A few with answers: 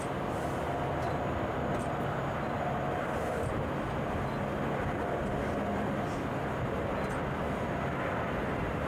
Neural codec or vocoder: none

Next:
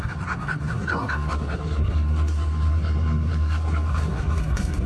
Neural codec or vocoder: codec, SNAC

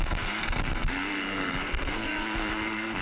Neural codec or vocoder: codec, SNAC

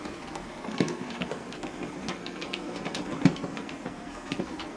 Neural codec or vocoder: codec, SNAC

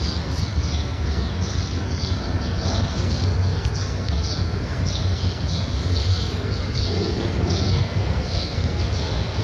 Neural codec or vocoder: codec, SNAC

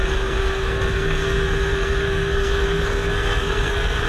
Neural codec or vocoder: codec, SNAC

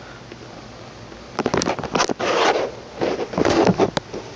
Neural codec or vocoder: none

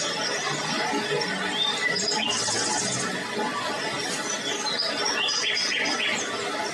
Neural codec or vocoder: none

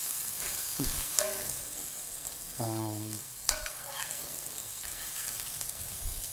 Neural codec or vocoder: codec, SNAC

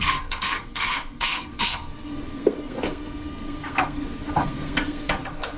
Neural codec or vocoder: codec, SNAC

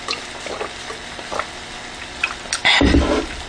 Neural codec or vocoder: none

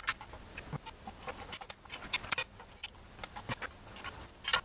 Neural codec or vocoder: none